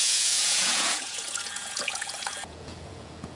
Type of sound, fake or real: fake